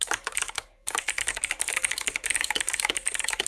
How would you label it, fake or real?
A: fake